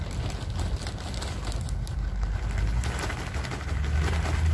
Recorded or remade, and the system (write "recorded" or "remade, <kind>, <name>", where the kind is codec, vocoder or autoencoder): recorded